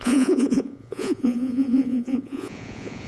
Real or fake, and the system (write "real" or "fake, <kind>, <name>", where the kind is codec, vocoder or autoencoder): fake, vocoder, Vocos